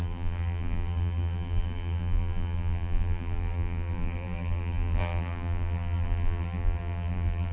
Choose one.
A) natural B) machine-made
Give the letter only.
B